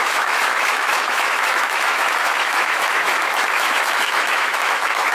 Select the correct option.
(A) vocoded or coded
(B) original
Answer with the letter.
A